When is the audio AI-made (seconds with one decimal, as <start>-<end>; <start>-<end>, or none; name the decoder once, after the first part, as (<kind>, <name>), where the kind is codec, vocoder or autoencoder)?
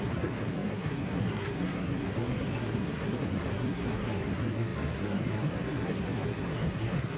0.0-7.2 (codec, SNAC)